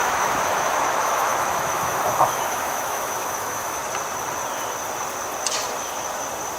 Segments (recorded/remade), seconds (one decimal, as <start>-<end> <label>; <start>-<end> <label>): 0.0-3.8 remade; 3.8-6.6 recorded